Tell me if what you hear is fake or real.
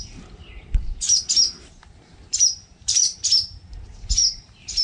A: fake